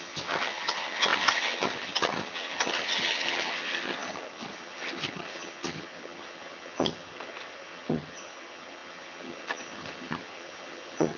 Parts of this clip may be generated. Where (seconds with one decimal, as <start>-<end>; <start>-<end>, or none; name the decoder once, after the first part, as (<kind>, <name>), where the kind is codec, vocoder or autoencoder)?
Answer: 0.0-11.2 (vocoder, HiFi-GAN)